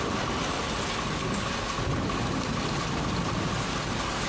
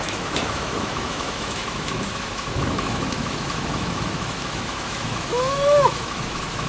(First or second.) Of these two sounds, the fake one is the second